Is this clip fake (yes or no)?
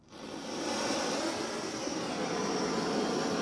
no